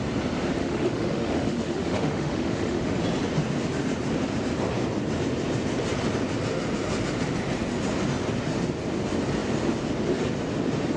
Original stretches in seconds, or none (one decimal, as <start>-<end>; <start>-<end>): 0.0-0.6; 3.0-11.0